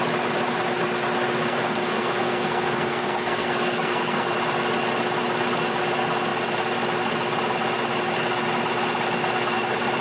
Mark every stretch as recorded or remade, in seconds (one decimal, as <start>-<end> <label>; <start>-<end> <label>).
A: 0.0-1.4 recorded; 1.4-4.3 remade; 4.3-10.0 recorded

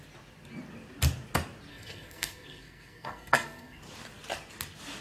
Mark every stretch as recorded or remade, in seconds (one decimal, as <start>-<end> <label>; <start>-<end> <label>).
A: 0.0-1.7 recorded; 1.7-3.8 remade; 3.8-5.0 recorded

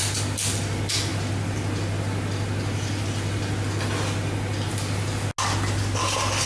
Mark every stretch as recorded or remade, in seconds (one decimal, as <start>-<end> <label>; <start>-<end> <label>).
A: 0.0-6.5 recorded

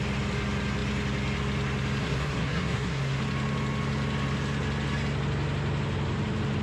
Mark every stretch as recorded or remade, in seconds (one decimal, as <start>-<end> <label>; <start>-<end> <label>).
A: 0.0-2.0 recorded; 2.0-3.2 remade; 3.2-6.6 recorded

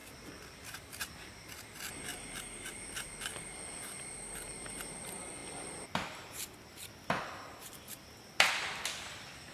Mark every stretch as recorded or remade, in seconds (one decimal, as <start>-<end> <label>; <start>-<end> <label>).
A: 0.0-1.3 remade; 1.3-9.5 recorded

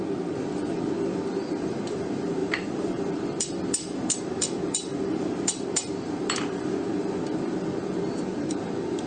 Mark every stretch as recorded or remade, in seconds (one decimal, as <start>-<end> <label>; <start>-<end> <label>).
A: 0.0-2.4 recorded; 2.4-7.2 remade; 7.2-9.1 recorded